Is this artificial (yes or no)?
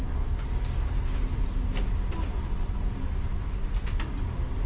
no